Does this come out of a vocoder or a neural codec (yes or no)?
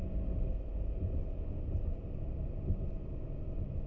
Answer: no